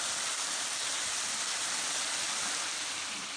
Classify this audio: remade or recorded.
recorded